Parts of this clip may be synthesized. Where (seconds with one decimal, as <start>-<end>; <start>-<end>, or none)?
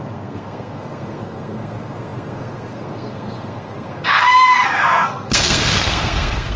0.0-6.6